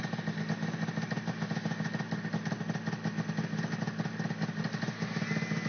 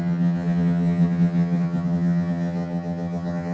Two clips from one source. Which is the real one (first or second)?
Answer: first